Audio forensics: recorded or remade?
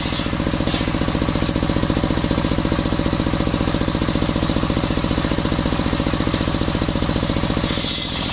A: recorded